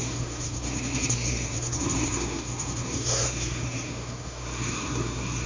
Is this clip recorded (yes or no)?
no